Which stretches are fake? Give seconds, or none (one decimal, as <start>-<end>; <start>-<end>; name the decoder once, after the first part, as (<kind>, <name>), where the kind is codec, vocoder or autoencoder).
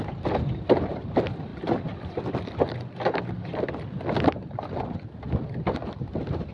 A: none